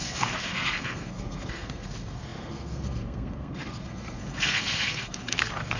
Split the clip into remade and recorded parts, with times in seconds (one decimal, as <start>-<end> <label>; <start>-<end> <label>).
0.0-5.8 remade